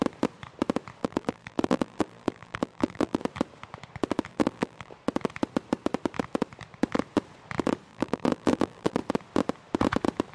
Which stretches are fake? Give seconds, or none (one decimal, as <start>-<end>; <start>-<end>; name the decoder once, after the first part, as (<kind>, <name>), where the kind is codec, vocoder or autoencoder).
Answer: 1.0-3.2 (vocoder, BigVGAN v2); 4.3-4.9; 7.9-9.0